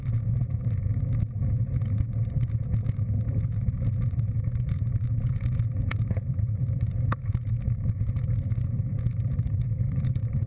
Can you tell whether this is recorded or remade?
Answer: remade